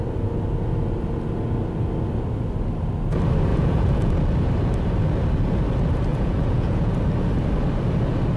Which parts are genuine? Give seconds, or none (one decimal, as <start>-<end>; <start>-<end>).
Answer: 0.0-3.5; 4.1-6.1; 6.9-8.4